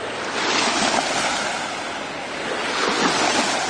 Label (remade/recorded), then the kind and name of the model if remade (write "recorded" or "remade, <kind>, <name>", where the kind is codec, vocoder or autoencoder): recorded